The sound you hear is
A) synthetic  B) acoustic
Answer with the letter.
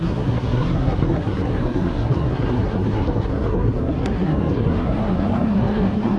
A